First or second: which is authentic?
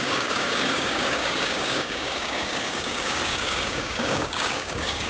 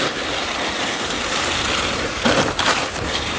second